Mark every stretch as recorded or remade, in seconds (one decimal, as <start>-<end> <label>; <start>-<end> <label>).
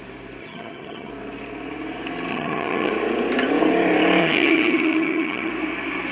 0.0-0.4 recorded; 0.4-1.1 remade; 1.1-2.3 recorded; 2.3-2.9 remade; 2.9-4.2 recorded; 4.2-5.5 remade; 5.5-6.1 recorded